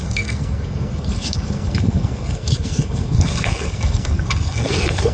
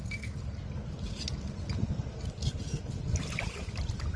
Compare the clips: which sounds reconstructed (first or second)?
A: first